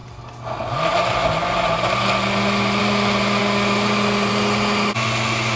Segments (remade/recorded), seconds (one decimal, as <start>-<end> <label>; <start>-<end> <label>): 0.0-5.6 recorded